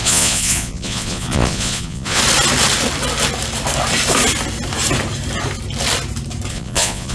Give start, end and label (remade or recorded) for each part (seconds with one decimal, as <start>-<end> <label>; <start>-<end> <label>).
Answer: 0.0-2.2 remade; 2.2-6.5 recorded; 6.5-7.1 remade